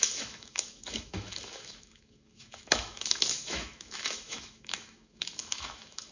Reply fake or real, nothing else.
fake